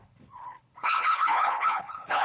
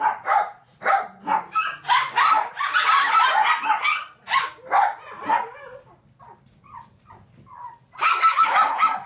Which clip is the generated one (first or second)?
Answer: first